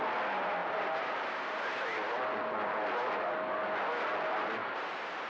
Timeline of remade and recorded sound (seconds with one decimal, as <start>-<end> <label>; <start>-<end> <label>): 0.0-0.6 recorded; 0.6-2.2 remade; 2.2-4.6 recorded; 4.6-5.3 remade